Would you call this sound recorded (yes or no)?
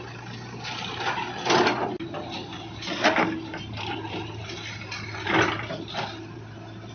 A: yes